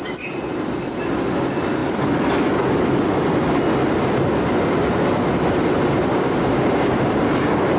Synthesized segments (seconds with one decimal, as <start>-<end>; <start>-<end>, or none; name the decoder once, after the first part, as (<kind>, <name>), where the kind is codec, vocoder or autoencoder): 6.1-6.9 (codec, DAC)